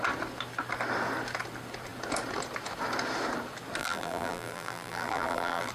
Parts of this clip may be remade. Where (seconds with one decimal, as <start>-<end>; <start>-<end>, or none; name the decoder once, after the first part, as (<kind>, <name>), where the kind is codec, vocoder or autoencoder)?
3.8-5.7 (vocoder, BigVGAN v2)